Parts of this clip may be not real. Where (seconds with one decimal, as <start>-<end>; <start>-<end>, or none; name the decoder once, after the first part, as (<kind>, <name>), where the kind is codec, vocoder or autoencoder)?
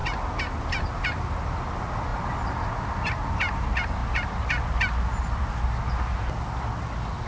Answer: none